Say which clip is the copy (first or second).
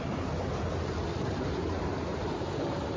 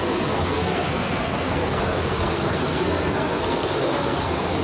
second